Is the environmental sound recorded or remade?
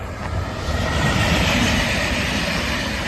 remade